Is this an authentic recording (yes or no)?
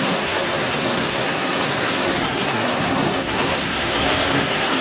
no